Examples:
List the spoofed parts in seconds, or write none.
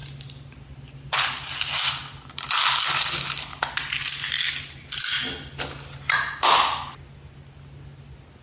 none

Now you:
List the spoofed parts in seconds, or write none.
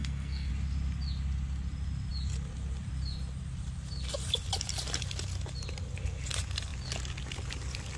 0.0-0.5 (codec, SNAC)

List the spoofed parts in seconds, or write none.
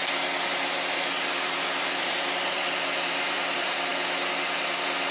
1.3-3.9 (vocoder, BigVGAN v2); 4.6-5.1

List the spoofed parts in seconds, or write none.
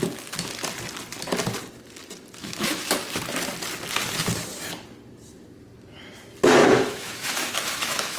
2.4-2.9 (autoencoder, DAC-VAE); 6.6-8.2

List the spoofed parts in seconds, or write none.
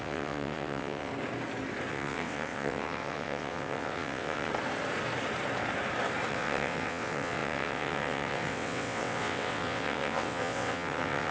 0.0-1.1 (vocoder, WaveNeXt); 1.9-4.5; 6.3-11.3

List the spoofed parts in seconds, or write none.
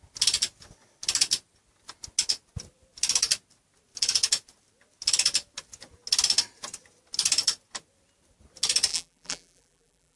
8.9-10.2 (vocoder, BigVGAN v2)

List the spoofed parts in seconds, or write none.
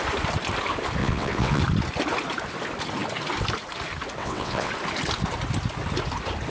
1.0-1.6 (vocoder, WaveNeXt); 4.2-4.7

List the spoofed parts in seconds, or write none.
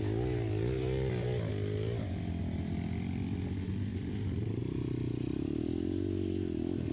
3.9-4.6 (vocoder, BigVGAN v2)